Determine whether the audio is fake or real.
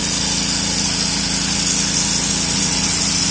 real